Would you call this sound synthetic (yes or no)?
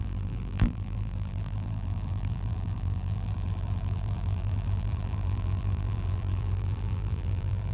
yes